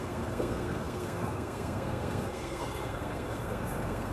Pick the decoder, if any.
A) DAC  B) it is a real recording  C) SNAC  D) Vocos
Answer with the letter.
C